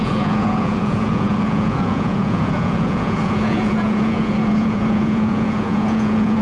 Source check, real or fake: fake